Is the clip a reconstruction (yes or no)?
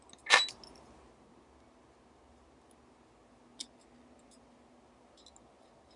no